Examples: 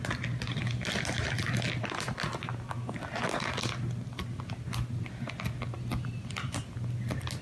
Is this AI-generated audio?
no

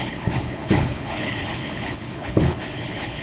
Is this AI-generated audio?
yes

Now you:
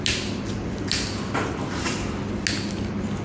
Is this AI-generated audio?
no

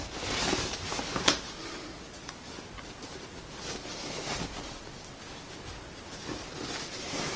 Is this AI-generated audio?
no